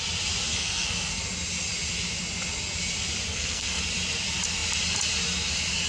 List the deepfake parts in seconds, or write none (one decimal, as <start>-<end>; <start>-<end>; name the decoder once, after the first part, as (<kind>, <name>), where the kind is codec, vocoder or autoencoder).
0.5-1.2 (codec, SNAC); 3.3-3.8